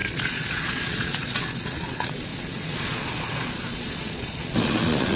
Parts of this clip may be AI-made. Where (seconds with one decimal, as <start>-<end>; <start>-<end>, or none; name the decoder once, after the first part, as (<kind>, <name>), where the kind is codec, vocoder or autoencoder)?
0.0-5.2 (vocoder, Vocos)